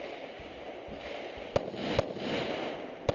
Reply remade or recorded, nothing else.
recorded